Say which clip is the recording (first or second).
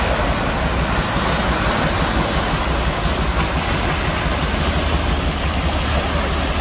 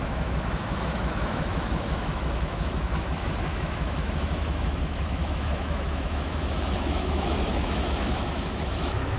first